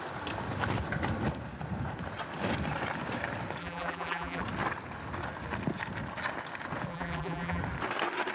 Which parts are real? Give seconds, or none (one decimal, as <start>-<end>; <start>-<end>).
0.0-3.6; 4.4-6.9; 7.6-8.3